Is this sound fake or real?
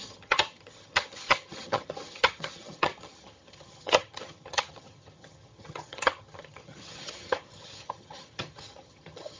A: fake